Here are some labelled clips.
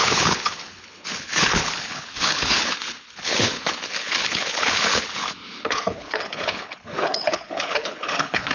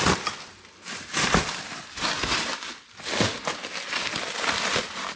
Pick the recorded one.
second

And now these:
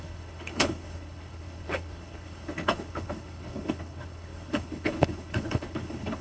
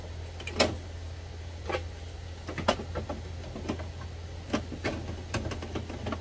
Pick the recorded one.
second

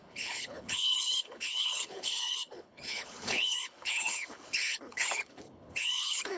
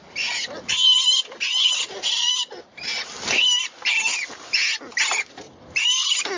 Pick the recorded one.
second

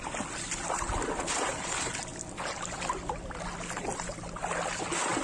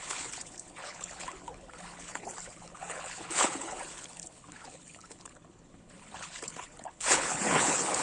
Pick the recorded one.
first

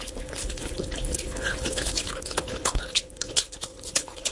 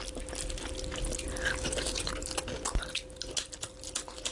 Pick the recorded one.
second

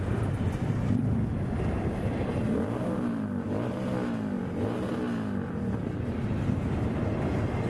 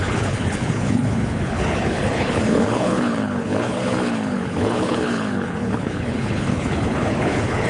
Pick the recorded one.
first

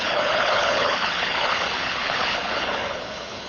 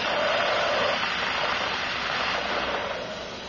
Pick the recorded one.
second